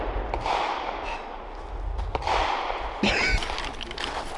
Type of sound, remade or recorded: recorded